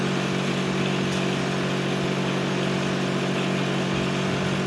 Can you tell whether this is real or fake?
real